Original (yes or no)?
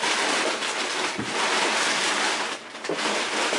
yes